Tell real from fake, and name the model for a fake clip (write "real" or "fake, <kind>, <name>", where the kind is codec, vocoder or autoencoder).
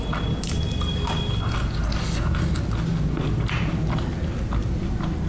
real